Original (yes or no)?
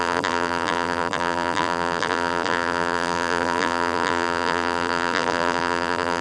no